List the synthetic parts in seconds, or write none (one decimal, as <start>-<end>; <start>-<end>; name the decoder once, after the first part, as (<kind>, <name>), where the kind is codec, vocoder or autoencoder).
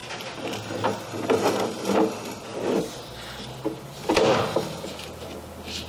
none